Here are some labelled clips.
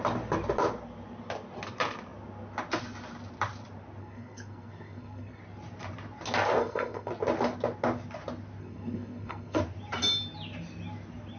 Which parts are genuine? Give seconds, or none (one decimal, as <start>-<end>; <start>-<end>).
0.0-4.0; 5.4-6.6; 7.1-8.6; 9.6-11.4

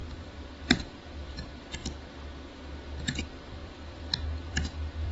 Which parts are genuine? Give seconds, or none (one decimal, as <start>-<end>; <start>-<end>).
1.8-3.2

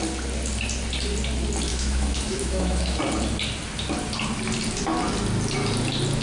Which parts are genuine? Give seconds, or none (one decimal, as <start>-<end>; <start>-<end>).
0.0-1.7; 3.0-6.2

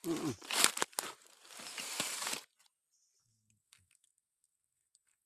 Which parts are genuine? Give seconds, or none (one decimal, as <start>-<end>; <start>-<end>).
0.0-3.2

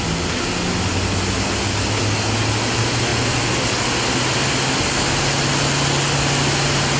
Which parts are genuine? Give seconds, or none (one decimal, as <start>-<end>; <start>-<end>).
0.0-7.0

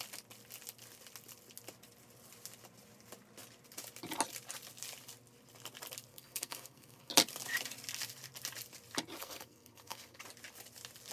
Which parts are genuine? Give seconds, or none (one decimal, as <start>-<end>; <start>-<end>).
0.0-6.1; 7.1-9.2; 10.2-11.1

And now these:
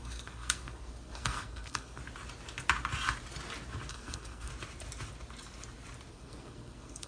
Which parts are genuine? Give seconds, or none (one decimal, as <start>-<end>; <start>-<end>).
2.0-3.9; 4.5-6.1

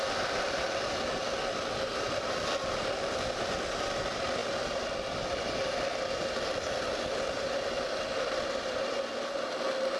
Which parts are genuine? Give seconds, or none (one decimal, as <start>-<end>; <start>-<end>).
0.0-10.0